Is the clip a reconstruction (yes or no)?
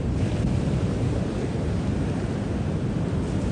no